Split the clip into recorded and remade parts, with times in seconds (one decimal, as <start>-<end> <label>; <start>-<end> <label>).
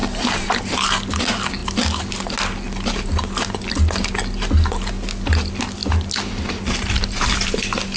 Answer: 0.0-8.0 recorded